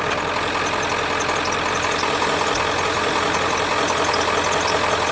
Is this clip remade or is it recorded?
recorded